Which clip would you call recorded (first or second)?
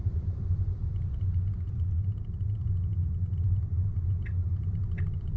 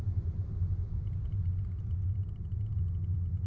second